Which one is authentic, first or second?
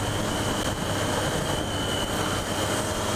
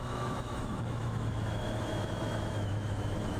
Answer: first